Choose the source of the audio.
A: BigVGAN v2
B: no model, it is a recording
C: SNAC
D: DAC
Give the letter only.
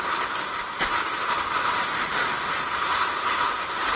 B